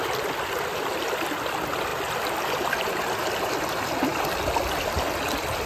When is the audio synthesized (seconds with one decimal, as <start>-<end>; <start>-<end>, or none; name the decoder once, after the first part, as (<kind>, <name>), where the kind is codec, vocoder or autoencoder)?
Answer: none